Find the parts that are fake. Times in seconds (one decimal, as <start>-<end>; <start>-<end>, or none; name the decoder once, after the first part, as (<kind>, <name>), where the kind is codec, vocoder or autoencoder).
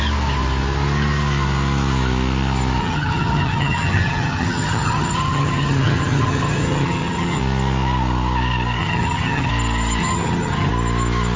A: 2.8-7.4 (vocoder, HiFi-GAN); 8.8-9.5; 10.0-10.7